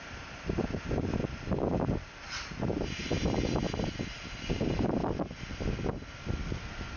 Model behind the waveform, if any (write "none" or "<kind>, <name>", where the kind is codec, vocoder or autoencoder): none